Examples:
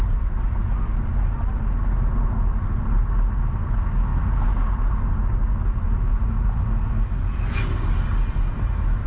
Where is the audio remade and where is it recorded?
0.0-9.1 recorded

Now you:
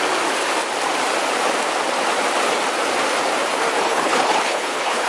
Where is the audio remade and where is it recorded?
0.0-3.8 recorded; 3.8-5.1 remade

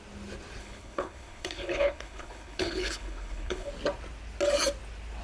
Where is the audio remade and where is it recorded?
0.0-0.6 recorded; 0.6-3.7 remade; 3.7-5.2 recorded

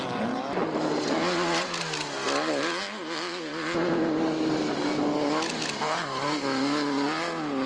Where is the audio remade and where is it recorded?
0.0-7.7 recorded

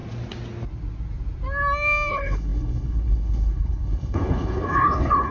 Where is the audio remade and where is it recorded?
0.0-2.1 recorded; 2.1-5.3 remade

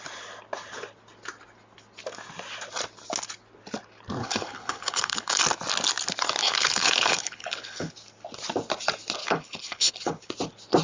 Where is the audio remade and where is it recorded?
0.0-4.2 recorded; 4.2-5.4 remade; 5.4-6.4 recorded; 6.4-7.9 remade; 7.9-9.2 recorded; 9.2-10.3 remade; 10.3-10.8 recorded

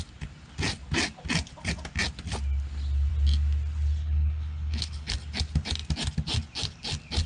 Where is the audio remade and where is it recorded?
0.0-4.0 recorded; 4.0-5.1 remade; 5.1-7.3 recorded

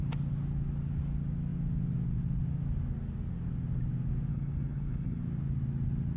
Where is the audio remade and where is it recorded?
0.0-4.3 recorded; 4.3-5.2 remade; 5.2-6.2 recorded